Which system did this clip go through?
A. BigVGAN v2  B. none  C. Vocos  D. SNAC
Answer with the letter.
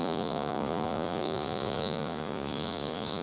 C